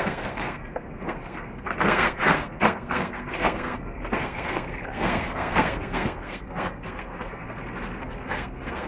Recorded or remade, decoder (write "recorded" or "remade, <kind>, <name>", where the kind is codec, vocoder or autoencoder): remade, codec, SNAC